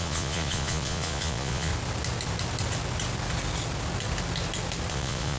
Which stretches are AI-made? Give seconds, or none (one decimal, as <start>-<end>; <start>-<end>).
0.0-1.7; 4.9-5.4